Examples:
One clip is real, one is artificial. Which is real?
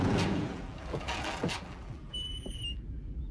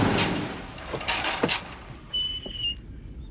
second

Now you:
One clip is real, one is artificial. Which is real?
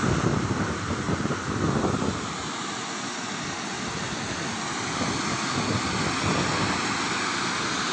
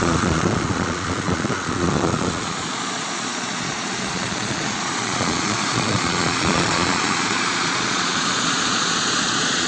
first